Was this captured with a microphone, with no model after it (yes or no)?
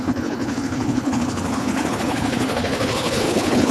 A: no